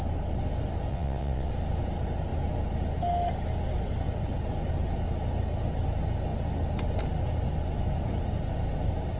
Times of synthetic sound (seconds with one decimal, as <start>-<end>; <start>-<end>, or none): 0.9-1.5